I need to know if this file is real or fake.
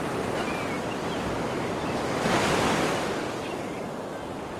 real